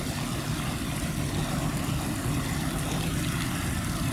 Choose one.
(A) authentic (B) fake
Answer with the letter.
A